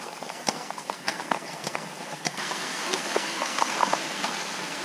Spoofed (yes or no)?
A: yes